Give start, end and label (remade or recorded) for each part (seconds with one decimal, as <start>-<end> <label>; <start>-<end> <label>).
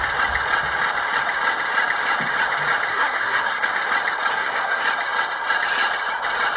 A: 0.0-2.9 recorded; 2.9-3.6 remade; 3.6-4.3 recorded; 4.3-4.8 remade; 4.8-6.6 recorded